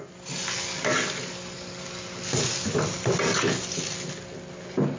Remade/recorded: recorded